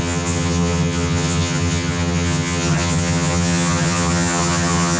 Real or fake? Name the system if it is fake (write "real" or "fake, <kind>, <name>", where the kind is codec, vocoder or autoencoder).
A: fake, vocoder, HiFi-GAN